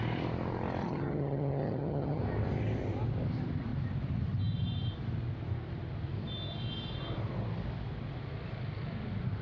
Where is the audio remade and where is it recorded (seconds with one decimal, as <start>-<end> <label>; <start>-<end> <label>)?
0.0-0.8 recorded; 0.8-2.2 remade; 2.2-9.4 recorded